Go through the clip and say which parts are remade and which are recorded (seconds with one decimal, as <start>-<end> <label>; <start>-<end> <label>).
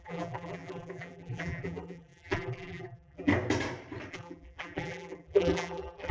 0.0-3.3 remade; 3.3-4.1 recorded; 4.1-6.1 remade